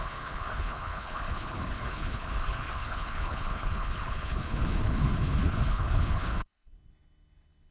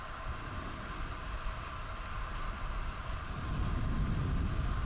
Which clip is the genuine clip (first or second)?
second